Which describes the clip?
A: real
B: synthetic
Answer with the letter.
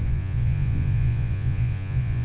B